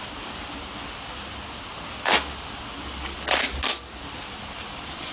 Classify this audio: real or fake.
real